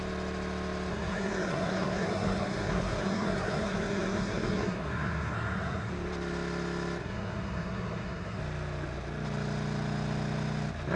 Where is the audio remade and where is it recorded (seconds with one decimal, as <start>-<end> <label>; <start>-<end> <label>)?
0.0-0.9 recorded; 0.9-5.9 remade; 5.9-7.0 recorded; 7.0-8.4 remade; 8.4-11.0 recorded